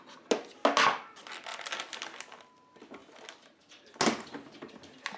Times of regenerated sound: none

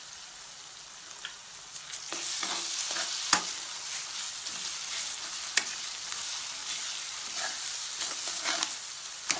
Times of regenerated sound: none

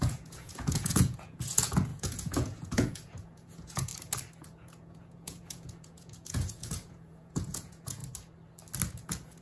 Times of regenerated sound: 0.0-3.9 (vocoder, Vocos); 4.4-8.0; 8.9-9.4

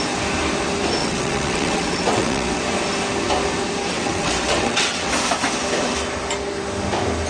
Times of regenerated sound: 1.0-2.6 (vocoder, WaveNeXt); 3.9-5.1

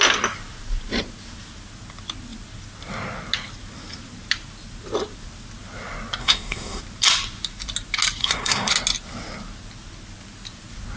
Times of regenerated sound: 6.2-6.8 (codec, SNAC); 8.2-8.7

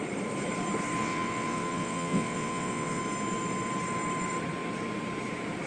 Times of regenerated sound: 1.0-3.0 (vocoder, WaveNeXt)

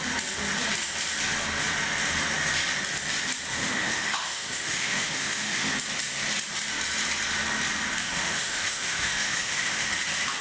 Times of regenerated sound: 3.5-5.7 (autoencoder, DAC-VAE); 8.0-9.9

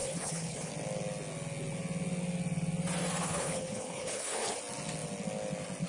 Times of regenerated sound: 0.0-0.7 (codec, HILCodec); 3.2-4.6